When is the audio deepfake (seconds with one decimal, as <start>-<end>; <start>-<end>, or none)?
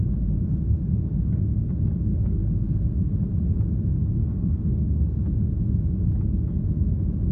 0.5-1.7; 2.1-3.2; 4.2-5.2